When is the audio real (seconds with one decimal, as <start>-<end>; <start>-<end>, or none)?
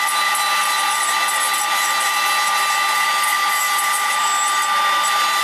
0.0-3.3; 4.1-5.4